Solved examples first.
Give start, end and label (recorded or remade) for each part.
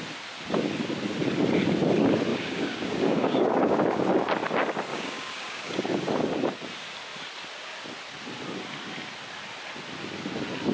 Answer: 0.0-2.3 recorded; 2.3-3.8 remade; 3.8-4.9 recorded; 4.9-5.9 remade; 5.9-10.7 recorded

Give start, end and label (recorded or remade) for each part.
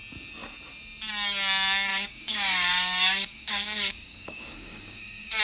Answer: 0.0-1.9 recorded; 1.9-5.4 remade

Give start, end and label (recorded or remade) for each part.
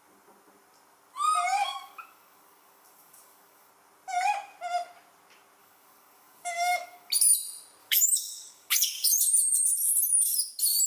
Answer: 0.0-1.6 recorded; 1.6-3.7 remade; 3.7-5.6 recorded; 5.6-7.1 remade; 7.1-7.8 recorded; 7.8-9.2 remade; 9.2-10.9 recorded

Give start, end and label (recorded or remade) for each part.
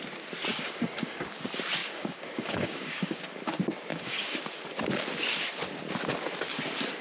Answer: 0.0-0.5 recorded; 0.5-1.2 remade; 1.2-1.8 recorded; 1.8-3.2 remade; 3.2-3.9 recorded; 3.9-4.4 remade; 4.4-7.0 recorded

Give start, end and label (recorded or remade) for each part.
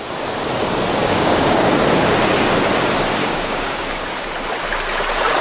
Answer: 0.0-1.0 recorded; 1.0-1.7 remade; 1.7-3.2 recorded; 3.2-4.1 remade; 4.1-5.4 recorded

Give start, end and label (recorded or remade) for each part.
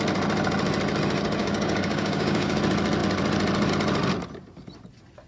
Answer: 0.0-1.4 recorded; 1.4-2.6 remade; 2.6-5.3 recorded